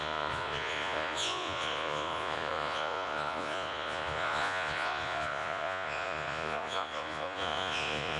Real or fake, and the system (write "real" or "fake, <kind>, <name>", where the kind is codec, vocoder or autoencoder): fake, vocoder, Vocos